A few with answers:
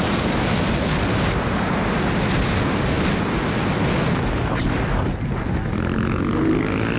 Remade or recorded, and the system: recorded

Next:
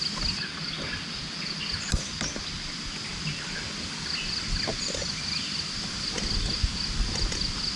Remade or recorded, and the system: recorded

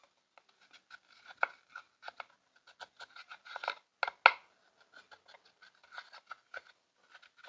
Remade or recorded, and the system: recorded